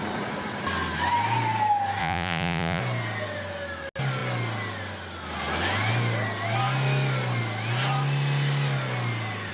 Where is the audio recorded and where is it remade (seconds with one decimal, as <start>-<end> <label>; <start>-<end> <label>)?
0.0-2.0 recorded; 2.0-2.8 remade; 2.8-9.5 recorded